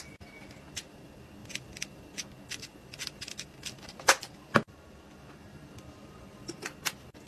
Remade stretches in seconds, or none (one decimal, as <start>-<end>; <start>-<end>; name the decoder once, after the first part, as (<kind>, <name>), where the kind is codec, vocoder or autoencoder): 1.4-2.2 (vocoder, BigVGAN v2); 2.7-6.5